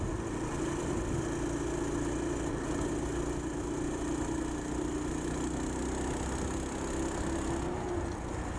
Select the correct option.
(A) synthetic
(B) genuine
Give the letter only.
B